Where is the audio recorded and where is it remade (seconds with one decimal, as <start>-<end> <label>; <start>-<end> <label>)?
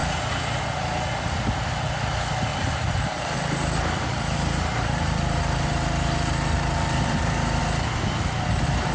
0.0-2.5 recorded; 2.5-7.6 remade; 7.6-8.9 recorded